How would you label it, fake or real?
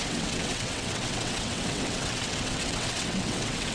fake